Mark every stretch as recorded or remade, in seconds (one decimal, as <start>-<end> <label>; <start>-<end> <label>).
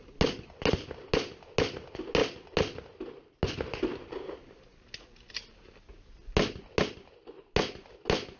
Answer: 0.0-8.4 recorded